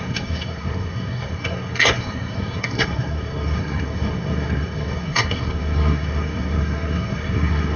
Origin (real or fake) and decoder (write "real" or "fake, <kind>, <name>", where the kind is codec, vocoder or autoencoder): fake, codec, SNAC